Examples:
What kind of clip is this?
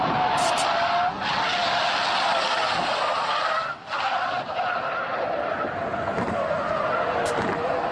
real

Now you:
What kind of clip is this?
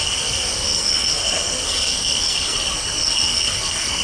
fake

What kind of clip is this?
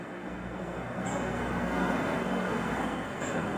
fake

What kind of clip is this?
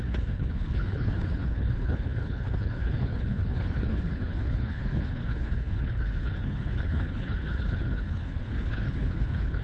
fake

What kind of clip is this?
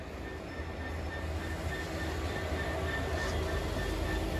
real